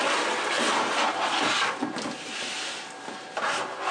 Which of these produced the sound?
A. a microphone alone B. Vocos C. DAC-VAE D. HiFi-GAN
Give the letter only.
A